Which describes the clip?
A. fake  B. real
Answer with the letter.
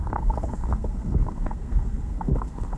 A